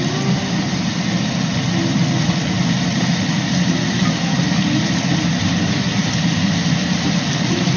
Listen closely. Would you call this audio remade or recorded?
recorded